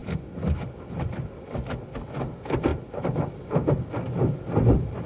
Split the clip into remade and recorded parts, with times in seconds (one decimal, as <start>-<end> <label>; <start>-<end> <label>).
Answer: 0.0-5.1 recorded